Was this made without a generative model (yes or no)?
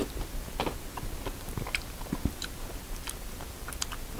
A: yes